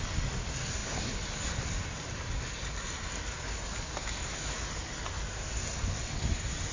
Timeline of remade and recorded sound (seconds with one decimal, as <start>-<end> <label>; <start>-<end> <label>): 0.0-4.0 recorded; 4.0-4.7 remade; 4.7-6.7 recorded